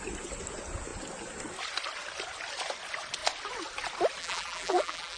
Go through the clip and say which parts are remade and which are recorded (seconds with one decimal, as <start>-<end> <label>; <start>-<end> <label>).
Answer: 0.0-4.2 recorded; 4.2-5.2 remade